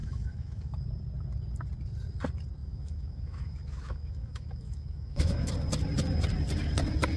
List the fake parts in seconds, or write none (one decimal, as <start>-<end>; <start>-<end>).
0.0-0.8; 2.6-5.5